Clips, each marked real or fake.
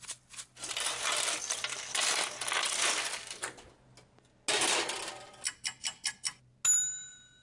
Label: real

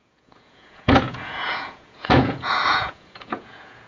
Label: fake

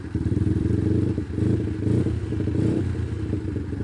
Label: real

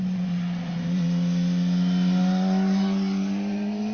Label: real